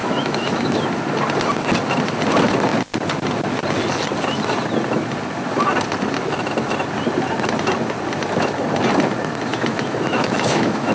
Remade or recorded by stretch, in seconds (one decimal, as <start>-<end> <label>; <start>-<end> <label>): 0.0-0.8 remade; 0.8-9.5 recorded; 9.5-10.9 remade